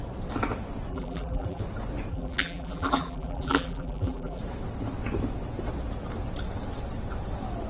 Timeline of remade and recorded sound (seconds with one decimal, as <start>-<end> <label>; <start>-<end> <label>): 0.0-0.9 recorded; 0.9-1.6 remade; 1.6-2.1 recorded; 2.1-4.4 remade; 4.4-7.7 recorded